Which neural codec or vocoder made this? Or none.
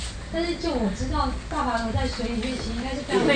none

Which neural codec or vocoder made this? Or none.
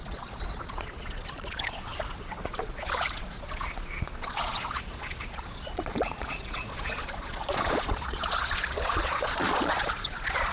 vocoder, Vocos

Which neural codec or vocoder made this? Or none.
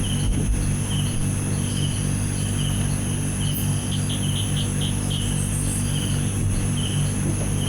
none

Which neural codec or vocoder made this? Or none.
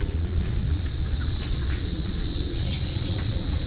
vocoder, Vocos